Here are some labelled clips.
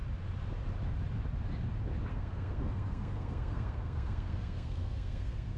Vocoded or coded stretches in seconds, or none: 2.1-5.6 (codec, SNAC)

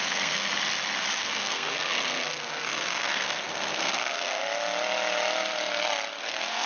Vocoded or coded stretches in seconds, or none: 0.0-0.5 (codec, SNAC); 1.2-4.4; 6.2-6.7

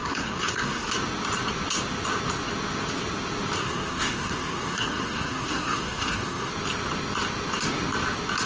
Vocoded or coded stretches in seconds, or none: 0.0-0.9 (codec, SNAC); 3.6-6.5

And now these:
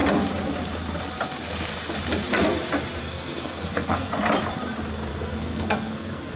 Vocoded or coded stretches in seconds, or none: 3.0-4.1 (codec, SNAC); 5.1-6.3

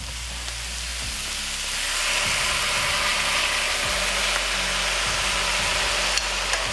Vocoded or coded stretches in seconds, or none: none

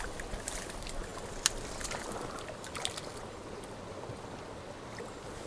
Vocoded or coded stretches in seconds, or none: none

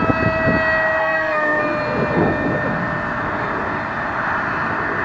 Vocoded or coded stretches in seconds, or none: 1.0-1.6 (codec, SNAC)

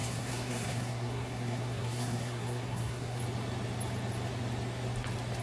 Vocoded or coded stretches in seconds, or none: 0.0-3.2 (codec, SNAC)